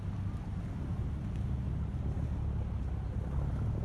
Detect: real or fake real